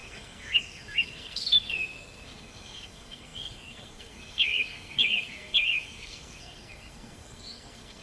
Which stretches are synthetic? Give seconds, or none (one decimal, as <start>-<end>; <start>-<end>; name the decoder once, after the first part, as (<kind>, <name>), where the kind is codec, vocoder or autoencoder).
0.0-8.0 (codec, SNAC)